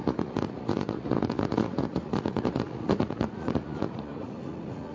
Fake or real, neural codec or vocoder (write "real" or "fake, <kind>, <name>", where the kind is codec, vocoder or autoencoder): fake, vocoder, Vocos